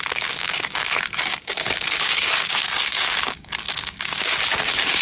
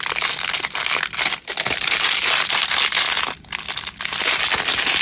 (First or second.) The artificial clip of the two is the first